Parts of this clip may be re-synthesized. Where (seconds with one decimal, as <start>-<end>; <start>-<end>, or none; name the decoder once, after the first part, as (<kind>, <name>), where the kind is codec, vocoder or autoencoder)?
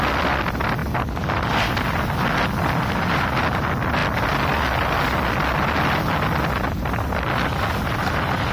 none